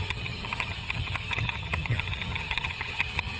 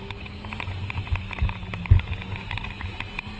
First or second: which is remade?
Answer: first